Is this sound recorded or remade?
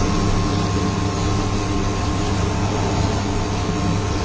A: recorded